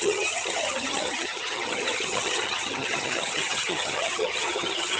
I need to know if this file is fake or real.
fake